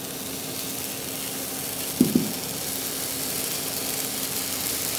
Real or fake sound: real